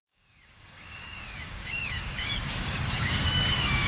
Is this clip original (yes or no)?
no